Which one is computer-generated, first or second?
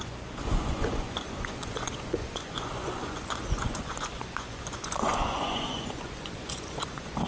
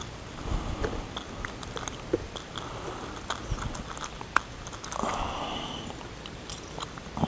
first